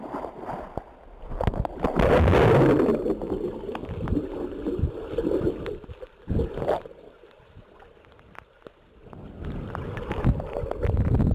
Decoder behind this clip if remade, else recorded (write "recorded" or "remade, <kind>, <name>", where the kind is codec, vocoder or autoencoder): recorded